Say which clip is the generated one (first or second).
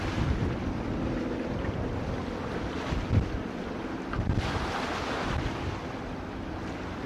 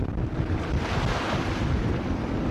second